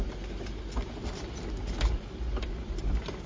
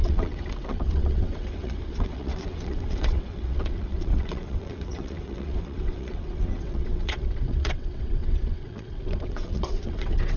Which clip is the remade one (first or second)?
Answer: second